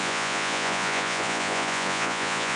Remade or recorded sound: remade